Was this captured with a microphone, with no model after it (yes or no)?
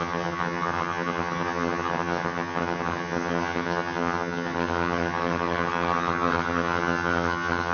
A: no